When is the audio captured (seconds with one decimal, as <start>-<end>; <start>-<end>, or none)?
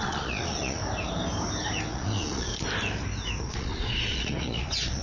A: 0.8-1.9; 2.5-3.4